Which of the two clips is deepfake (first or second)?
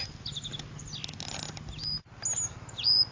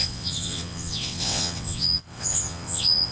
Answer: second